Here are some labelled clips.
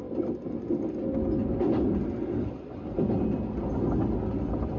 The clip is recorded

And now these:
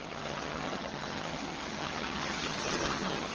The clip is remade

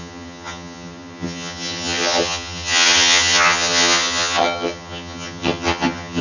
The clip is remade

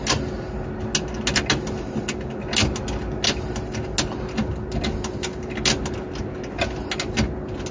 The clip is recorded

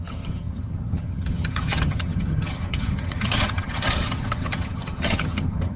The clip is remade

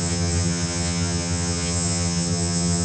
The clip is remade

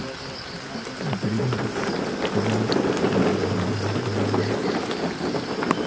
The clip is recorded